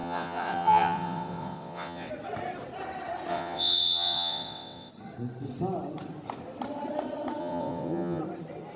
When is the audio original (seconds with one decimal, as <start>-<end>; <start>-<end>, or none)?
2.1-3.3; 4.9-7.4; 8.2-8.8